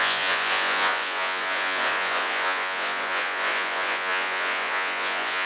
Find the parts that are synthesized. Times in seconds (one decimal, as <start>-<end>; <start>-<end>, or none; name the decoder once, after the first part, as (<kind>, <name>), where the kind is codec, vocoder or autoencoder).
0.0-5.5 (vocoder, Vocos)